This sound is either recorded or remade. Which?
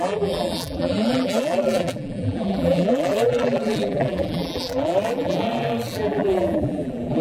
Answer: remade